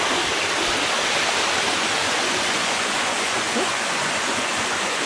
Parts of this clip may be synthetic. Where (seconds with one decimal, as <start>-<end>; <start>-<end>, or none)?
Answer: 1.7-5.1